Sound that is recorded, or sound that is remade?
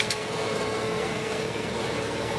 remade